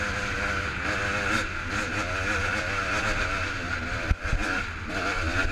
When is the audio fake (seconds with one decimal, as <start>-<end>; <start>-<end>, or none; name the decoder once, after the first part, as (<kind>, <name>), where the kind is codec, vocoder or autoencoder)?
none